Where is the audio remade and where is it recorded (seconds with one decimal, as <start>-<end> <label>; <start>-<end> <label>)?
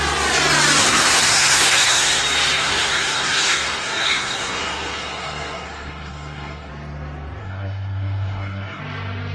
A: 0.0-0.8 recorded; 0.8-2.2 remade; 2.2-2.6 recorded; 2.6-6.7 remade; 6.7-7.4 recorded; 7.4-8.8 remade; 8.8-9.3 recorded